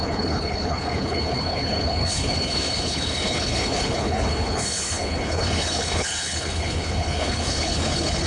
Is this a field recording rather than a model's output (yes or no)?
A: no